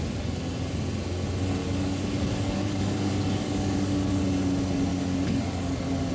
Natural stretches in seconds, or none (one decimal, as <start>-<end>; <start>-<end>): 0.0-1.6; 4.2-4.9

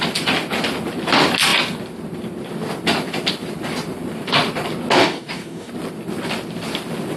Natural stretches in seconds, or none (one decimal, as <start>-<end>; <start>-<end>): 0.0-5.0; 5.7-7.2

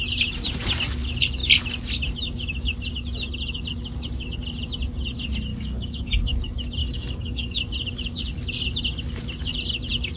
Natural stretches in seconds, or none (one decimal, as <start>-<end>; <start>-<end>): 0.0-5.5; 6.0-6.8; 7.6-10.2